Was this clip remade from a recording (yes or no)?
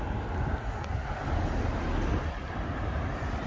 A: no